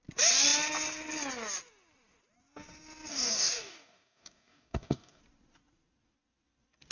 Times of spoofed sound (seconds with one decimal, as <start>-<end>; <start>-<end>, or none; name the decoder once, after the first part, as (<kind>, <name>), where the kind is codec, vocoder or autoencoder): 3.1-5.2 (codec, DAC)